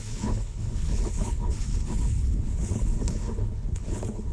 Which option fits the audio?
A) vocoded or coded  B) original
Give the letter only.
A